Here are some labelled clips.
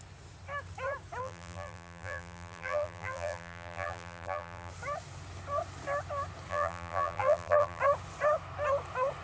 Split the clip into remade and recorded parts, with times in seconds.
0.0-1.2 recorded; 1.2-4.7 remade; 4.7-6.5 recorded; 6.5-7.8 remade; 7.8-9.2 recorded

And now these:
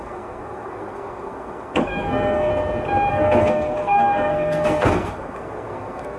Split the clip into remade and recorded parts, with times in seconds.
0.0-2.5 remade; 2.5-3.1 recorded; 3.1-6.2 remade

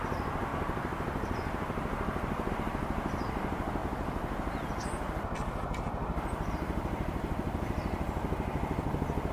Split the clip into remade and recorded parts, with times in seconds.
0.0-9.3 recorded

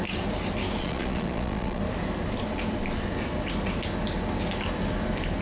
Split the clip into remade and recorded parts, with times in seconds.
0.0-0.8 recorded; 0.8-1.8 remade; 1.8-5.4 recorded

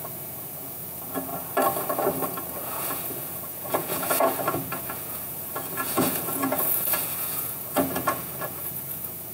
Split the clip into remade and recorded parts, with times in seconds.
0.0-1.3 remade; 1.3-2.3 recorded; 2.3-9.3 remade